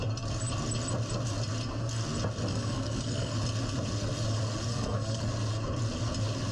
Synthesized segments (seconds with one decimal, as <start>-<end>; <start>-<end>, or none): 2.5-3.3; 4.7-5.2